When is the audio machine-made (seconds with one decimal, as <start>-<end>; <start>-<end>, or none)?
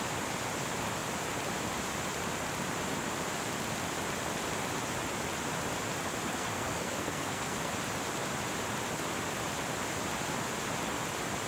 6.3-7.7